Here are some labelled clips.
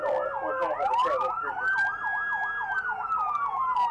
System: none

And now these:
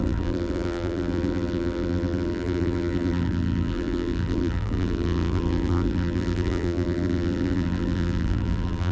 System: vocoder, BigVGAN v2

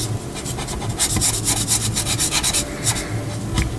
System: none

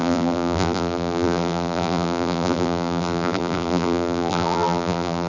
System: vocoder, BigVGAN v2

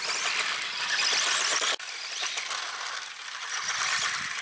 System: none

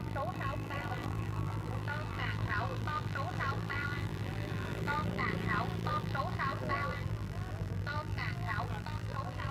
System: vocoder, BigVGAN v2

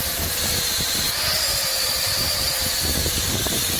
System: vocoder, BigVGAN v2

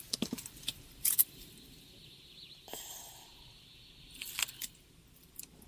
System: none